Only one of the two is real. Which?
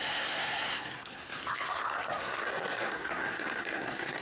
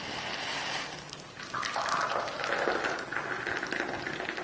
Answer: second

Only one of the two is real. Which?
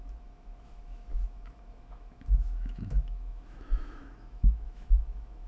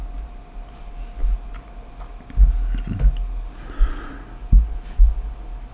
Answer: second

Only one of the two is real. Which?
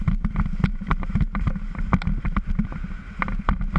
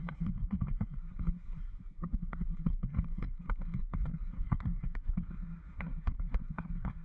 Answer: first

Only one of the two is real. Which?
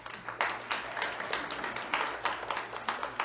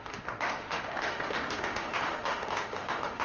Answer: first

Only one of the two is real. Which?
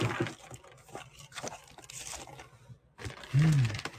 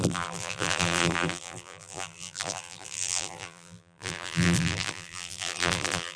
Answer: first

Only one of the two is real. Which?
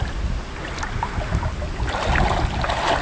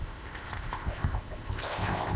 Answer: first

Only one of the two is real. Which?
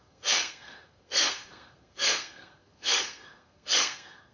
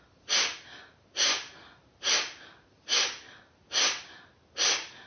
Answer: second